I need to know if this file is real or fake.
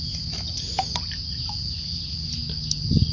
real